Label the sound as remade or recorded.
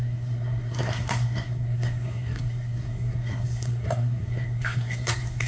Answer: remade